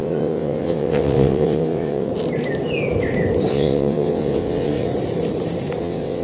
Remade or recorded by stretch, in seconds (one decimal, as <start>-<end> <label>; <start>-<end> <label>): 0.0-2.1 remade; 2.1-3.5 recorded; 3.5-4.9 remade; 4.9-5.8 recorded; 5.8-6.2 remade